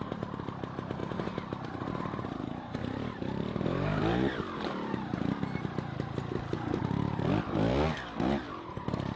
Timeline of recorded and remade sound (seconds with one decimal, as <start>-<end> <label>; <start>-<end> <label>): 0.0-1.0 remade; 1.0-1.9 recorded; 1.9-3.9 remade; 3.9-8.7 recorded; 8.7-9.2 remade